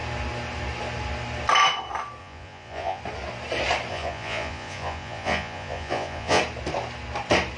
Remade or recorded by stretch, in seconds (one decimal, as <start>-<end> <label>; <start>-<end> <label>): 0.0-2.2 recorded; 2.2-3.0 remade; 3.0-3.9 recorded; 3.9-6.4 remade; 6.4-7.6 recorded